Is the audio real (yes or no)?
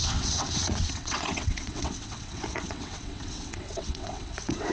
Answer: no